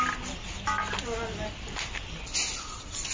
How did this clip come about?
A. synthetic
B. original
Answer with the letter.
B